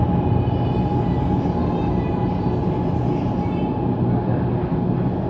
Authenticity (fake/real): real